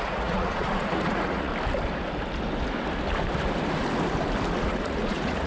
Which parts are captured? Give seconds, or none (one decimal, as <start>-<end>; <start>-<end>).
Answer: 1.5-4.6